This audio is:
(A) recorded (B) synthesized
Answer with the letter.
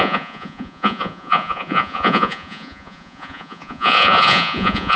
B